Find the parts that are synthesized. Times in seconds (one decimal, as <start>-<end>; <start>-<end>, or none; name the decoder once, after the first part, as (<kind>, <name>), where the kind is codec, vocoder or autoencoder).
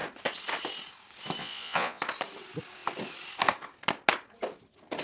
1.4-2.0 (vocoder, Vocos)